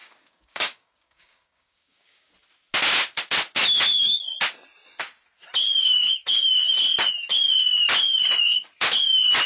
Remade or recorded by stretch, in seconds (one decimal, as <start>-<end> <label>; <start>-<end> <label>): 0.0-2.3 remade; 2.3-9.5 recorded